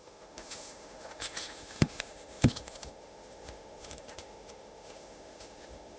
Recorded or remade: remade